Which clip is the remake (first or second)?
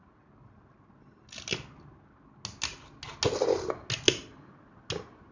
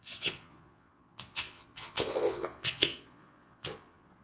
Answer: second